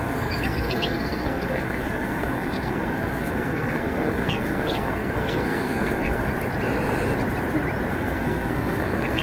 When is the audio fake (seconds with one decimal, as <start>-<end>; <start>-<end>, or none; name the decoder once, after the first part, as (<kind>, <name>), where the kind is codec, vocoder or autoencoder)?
0.0-6.3 (codec, SNAC); 7.9-9.2

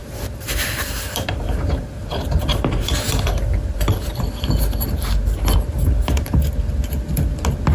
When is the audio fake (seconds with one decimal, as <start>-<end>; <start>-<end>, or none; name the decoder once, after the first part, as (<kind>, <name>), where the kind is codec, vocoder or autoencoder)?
0.0-4.6 (vocoder, BigVGAN v2); 5.7-6.4

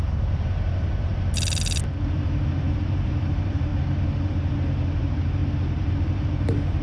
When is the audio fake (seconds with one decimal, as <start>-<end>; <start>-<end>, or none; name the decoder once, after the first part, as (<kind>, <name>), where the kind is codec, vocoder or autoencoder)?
0.0-1.1 (vocoder, BigVGAN v2); 2.1-3.7; 4.3-6.8

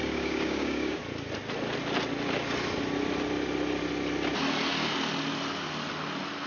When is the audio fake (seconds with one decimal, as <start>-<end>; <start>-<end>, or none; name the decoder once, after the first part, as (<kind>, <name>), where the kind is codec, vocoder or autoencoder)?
0.0-1.0 (codec, DAC)

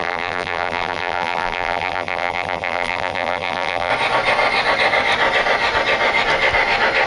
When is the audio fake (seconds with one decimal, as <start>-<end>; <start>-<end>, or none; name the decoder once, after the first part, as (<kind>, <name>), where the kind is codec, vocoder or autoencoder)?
0.0-3.9 (vocoder, BigVGAN v2)

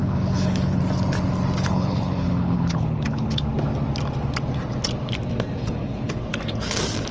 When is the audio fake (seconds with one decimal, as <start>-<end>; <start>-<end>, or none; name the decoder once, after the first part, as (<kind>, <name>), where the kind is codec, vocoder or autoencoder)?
0.0-0.8 (codec, HILCodec); 1.7-3.3; 5.6-6.2

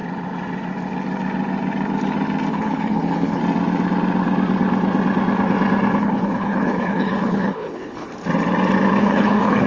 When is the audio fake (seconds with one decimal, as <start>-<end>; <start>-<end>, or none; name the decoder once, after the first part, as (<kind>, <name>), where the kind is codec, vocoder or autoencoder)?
2.5-3.4 (codec, HILCodec); 6.0-8.1; 9.0-9.7